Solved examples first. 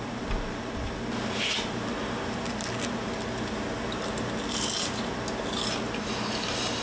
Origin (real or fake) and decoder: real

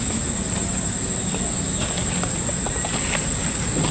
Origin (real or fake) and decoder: real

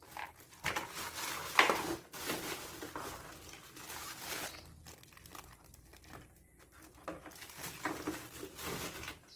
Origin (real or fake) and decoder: real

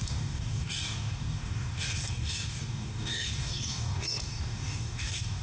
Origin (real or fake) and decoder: fake, codec, DAC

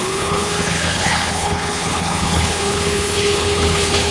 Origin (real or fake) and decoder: fake, codec, HILCodec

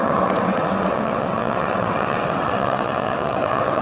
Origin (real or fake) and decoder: fake, vocoder, WaveNeXt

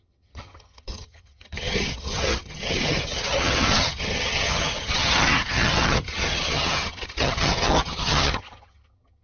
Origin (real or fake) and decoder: fake, vocoder, HiFi-GAN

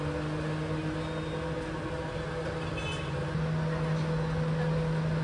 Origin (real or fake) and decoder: real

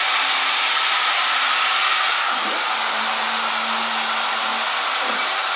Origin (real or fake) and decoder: real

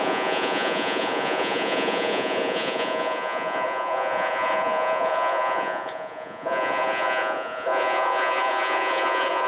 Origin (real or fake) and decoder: fake, vocoder, Vocos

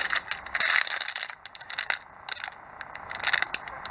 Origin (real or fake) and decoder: real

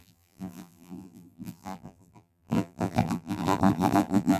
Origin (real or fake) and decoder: fake, vocoder, BigVGAN v2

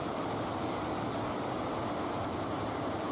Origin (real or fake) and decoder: real